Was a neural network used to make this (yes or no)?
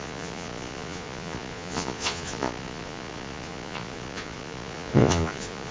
yes